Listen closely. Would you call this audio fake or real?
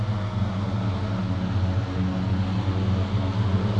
real